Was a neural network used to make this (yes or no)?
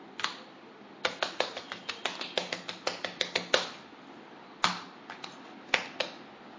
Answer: no